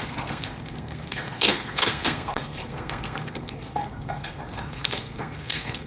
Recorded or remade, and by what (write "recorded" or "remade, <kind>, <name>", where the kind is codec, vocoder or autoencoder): remade, codec, SNAC